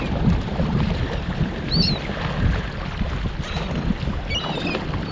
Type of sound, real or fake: real